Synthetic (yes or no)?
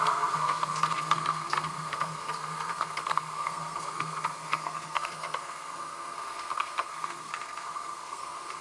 yes